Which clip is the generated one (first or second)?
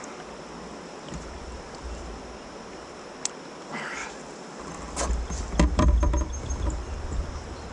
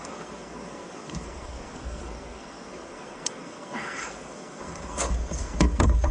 second